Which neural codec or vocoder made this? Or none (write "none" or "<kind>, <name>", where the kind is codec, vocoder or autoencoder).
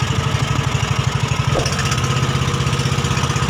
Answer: none